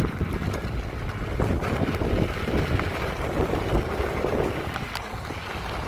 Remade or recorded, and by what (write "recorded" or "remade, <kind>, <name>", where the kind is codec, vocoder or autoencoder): remade, vocoder, BigVGAN v2